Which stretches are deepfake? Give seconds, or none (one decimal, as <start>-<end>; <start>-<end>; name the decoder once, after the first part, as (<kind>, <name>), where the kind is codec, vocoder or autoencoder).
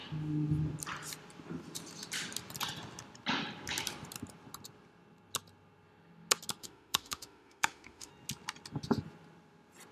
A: 6.6-8.1 (autoencoder, DAC-VAE)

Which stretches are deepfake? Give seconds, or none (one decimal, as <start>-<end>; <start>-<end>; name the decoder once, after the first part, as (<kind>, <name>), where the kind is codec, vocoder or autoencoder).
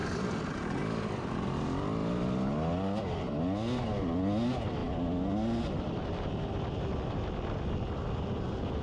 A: 0.0-0.8 (vocoder, BigVGAN v2); 2.0-3.4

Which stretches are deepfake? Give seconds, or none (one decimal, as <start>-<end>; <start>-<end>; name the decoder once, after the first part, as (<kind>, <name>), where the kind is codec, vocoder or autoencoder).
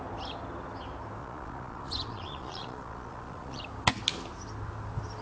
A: 1.2-3.6 (vocoder, Vocos)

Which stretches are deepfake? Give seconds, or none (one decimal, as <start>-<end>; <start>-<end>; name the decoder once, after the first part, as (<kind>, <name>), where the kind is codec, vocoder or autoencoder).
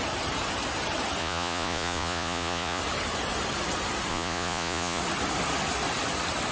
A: 1.2-2.8 (vocoder, Vocos); 4.1-5.0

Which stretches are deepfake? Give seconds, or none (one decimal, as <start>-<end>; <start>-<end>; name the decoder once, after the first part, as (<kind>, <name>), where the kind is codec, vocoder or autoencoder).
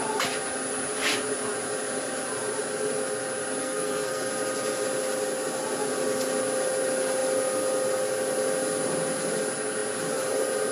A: 3.6-4.3 (codec, SNAC)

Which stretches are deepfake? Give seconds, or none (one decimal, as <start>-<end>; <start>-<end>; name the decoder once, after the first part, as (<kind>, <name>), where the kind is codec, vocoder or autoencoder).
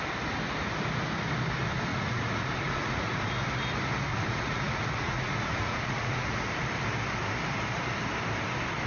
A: 1.9-3.2 (vocoder, Vocos); 4.1-6.4